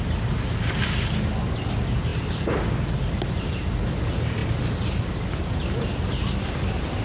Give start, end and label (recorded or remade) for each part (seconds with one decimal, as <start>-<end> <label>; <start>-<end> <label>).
0.0-7.0 recorded